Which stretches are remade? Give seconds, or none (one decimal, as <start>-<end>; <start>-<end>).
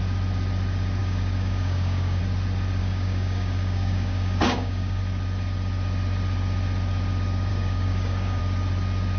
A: 1.0-2.2; 2.8-5.0; 7.5-8.4